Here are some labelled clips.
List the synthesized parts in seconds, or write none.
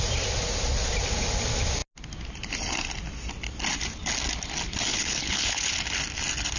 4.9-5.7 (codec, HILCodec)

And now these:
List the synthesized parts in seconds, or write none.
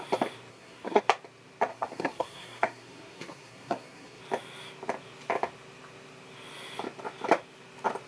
0.5-1.0 (codec, SNAC); 1.7-4.2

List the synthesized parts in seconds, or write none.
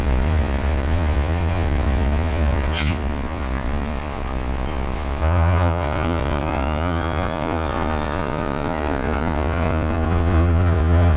0.0-11.2 (vocoder, Vocos)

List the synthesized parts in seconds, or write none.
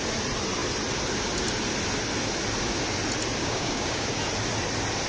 3.4-4.1 (codec, DAC)